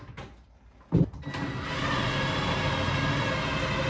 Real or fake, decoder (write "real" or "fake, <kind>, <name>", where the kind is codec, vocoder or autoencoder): real